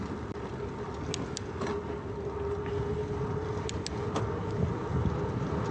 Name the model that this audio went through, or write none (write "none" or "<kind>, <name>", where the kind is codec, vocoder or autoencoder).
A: none